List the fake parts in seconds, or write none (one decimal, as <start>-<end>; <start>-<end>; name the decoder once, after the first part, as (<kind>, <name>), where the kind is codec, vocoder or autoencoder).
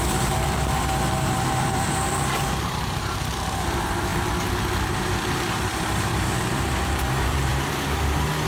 0.0-4.1 (vocoder, BigVGAN v2); 4.9-7.5